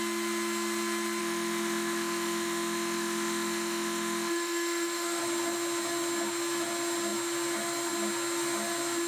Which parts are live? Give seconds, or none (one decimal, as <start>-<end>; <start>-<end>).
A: 0.0-1.2; 5.2-9.1